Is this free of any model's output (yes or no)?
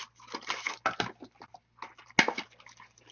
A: yes